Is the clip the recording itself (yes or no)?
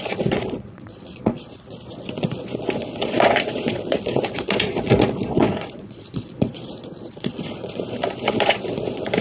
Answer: no